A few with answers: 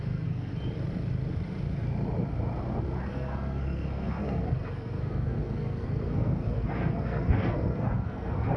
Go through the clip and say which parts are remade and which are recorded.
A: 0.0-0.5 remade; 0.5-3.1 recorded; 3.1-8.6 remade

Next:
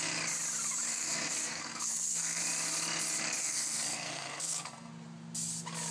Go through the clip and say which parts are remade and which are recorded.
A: 0.0-0.9 recorded; 0.9-2.4 remade; 2.4-3.4 recorded; 3.4-4.9 remade; 4.9-5.9 recorded

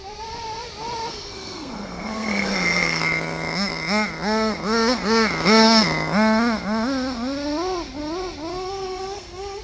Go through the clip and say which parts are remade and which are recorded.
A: 0.0-1.1 recorded; 1.1-3.0 remade; 3.0-8.5 recorded; 8.5-9.6 remade